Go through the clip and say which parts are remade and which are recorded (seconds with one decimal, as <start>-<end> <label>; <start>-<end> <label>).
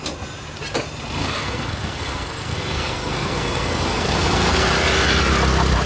0.0-1.2 recorded; 1.2-4.7 remade; 4.7-5.9 recorded